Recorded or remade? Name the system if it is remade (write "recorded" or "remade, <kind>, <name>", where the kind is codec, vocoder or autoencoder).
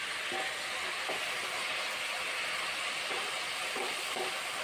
recorded